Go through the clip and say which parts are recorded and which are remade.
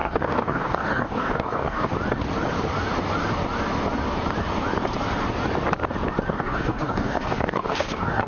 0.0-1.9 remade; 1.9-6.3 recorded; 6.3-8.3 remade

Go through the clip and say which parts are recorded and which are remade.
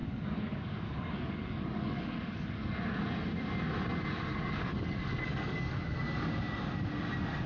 0.0-2.8 remade; 2.8-4.3 recorded; 4.3-6.0 remade; 6.0-7.5 recorded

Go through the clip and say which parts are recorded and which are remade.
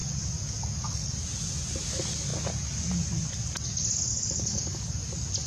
0.0-4.1 recorded; 4.1-4.9 remade; 4.9-5.5 recorded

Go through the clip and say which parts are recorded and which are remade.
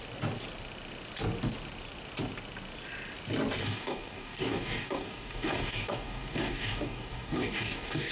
0.0-3.6 recorded; 3.6-8.1 remade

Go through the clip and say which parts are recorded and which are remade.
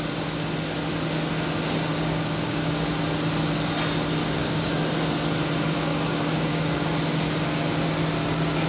0.0-1.9 recorded; 1.9-2.9 remade; 2.9-4.2 recorded; 4.2-4.7 remade; 4.7-5.9 recorded; 5.9-6.9 remade; 6.9-8.7 recorded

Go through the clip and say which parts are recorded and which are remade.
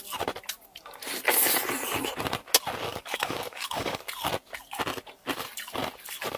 0.0-2.9 recorded; 2.9-4.0 remade; 4.0-6.4 recorded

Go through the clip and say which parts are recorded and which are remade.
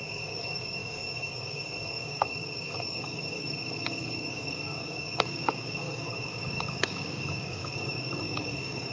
0.0-8.9 remade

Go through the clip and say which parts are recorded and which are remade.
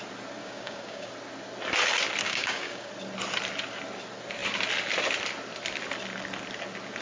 0.0-0.4 recorded; 0.4-1.1 remade; 1.1-2.2 recorded; 2.2-2.9 remade; 2.9-7.0 recorded